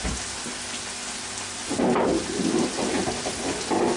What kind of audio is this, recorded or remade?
recorded